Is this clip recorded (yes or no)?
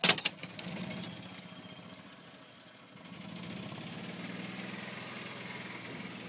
yes